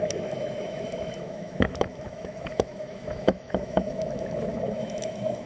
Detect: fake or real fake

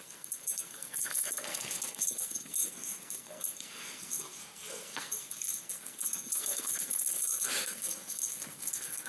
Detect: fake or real fake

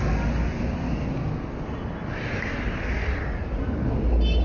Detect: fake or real real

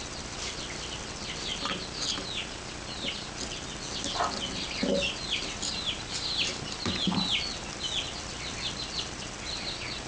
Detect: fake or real real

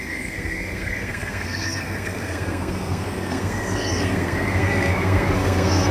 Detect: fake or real fake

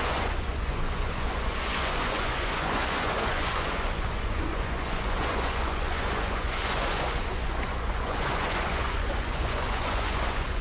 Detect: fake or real fake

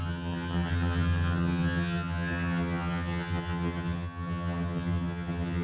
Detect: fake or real fake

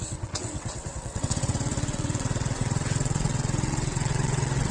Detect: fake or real fake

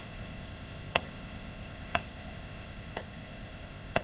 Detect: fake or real fake